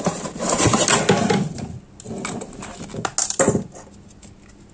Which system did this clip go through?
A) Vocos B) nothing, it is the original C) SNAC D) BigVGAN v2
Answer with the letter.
B